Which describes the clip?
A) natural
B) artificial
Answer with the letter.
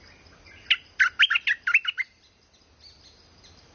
A